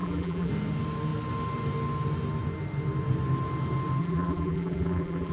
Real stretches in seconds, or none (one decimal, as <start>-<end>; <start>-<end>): 0.5-4.0